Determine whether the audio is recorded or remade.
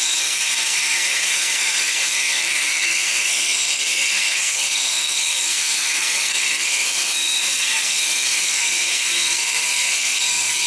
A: remade